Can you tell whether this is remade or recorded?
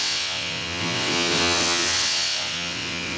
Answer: remade